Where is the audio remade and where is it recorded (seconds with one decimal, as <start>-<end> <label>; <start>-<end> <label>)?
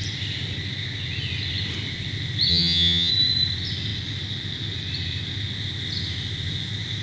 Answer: 0.0-2.5 recorded; 2.5-3.1 remade; 3.1-7.0 recorded